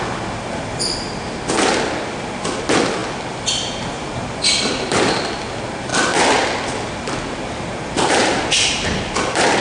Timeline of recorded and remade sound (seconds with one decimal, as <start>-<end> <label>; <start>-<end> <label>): 0.0-9.6 recorded